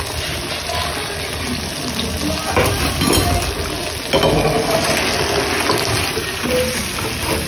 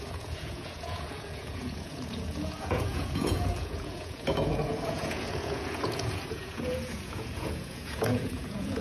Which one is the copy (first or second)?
second